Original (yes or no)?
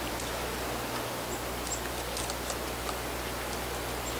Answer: yes